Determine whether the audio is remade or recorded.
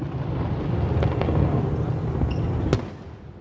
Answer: recorded